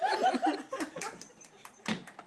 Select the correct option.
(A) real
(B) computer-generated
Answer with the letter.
B